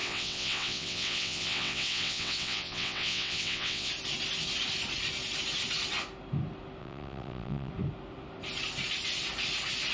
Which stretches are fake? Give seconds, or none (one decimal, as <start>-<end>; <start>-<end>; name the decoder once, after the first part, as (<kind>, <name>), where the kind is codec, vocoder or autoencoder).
0.0-3.9 (vocoder, WaveNeXt); 6.8-7.7